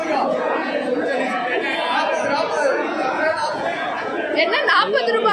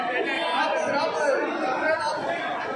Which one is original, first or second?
second